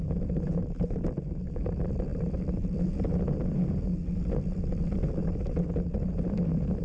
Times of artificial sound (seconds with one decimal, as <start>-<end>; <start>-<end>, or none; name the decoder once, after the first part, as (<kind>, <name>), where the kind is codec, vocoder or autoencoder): 0.0-0.6 (vocoder, BigVGAN v2); 1.4-6.8